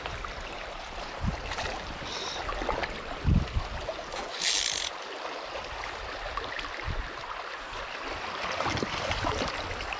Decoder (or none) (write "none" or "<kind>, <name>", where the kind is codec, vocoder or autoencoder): none